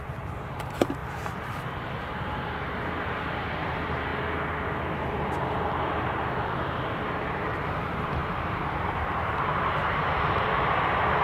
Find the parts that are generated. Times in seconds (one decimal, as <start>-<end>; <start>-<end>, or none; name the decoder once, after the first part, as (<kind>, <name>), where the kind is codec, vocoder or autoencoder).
0.0-4.1 (vocoder, BigVGAN v2); 5.0-11.2